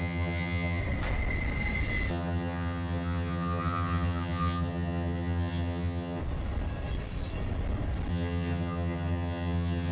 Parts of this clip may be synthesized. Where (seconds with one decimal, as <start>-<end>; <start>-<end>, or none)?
0.0-0.8; 2.1-6.2; 8.1-9.9